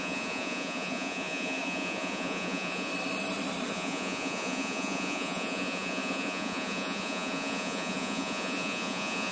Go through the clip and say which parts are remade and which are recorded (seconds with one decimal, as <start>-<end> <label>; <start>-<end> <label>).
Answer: 0.0-2.9 remade; 2.9-3.7 recorded; 3.7-9.3 remade